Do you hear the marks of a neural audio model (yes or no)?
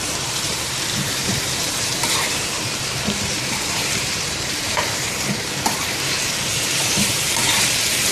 yes